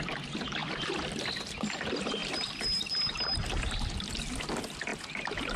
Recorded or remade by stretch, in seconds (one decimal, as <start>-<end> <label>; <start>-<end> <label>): 0.0-0.6 recorded; 0.6-1.2 remade; 1.2-5.6 recorded